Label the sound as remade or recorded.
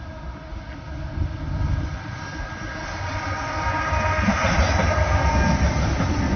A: recorded